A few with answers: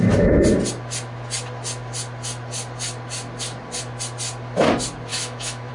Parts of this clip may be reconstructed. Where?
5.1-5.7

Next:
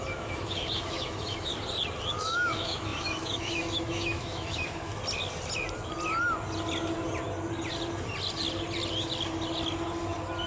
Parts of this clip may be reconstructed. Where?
0.0-1.5; 2.1-4.9